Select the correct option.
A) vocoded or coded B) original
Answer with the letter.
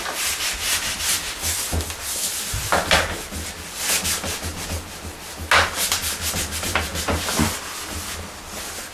B